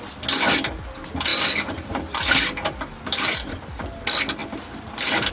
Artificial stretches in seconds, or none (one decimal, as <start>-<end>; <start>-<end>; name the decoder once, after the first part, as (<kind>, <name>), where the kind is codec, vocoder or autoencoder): none